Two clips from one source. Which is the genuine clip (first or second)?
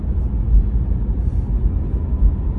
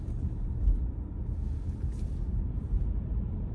first